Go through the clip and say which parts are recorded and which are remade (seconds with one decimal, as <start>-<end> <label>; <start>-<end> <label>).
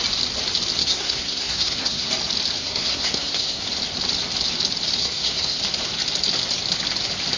0.0-0.8 recorded; 0.8-2.1 remade; 2.1-2.6 recorded; 2.6-3.6 remade; 3.6-5.0 recorded; 5.0-5.6 remade; 5.6-7.4 recorded